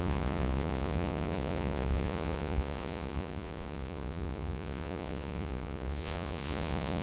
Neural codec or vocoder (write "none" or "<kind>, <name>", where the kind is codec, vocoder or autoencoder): vocoder, Vocos